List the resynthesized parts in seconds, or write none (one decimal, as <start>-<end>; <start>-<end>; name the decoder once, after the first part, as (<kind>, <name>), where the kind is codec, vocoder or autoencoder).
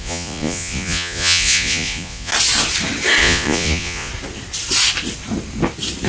0.0-2.3 (vocoder, Vocos); 3.2-4.1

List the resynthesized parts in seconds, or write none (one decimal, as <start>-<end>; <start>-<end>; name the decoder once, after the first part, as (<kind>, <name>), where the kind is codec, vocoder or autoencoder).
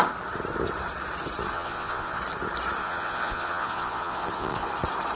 1.5-2.2 (vocoder, Vocos); 2.8-4.7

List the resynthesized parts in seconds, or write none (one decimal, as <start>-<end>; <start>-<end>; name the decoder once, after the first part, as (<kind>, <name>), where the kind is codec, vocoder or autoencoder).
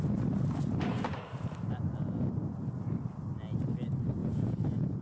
4.2-5.0 (vocoder, Vocos)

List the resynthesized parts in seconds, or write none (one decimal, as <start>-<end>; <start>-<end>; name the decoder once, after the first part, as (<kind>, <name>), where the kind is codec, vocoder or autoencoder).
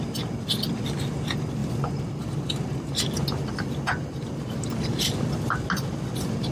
none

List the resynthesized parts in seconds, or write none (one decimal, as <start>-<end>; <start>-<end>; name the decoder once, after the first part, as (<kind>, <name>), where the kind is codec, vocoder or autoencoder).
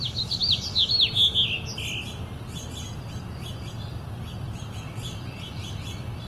none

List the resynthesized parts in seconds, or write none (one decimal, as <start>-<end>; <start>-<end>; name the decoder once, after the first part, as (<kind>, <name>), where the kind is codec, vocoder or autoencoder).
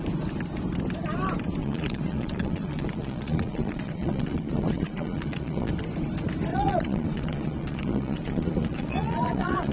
1.6-5.7 (vocoder, Vocos); 6.5-9.7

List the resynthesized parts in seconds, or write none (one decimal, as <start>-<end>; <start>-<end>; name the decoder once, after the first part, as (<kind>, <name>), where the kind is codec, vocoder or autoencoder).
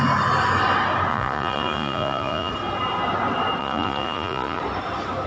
1.1-2.5 (vocoder, Vocos); 3.6-4.6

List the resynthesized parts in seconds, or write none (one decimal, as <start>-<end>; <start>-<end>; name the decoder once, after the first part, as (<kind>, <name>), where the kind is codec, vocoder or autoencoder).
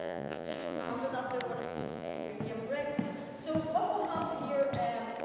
0.0-0.9 (vocoder, Vocos); 1.6-2.3